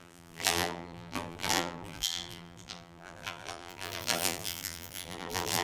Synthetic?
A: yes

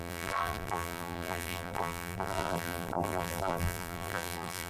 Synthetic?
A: yes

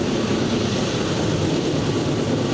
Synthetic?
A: yes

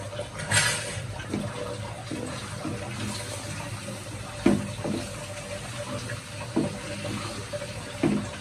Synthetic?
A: no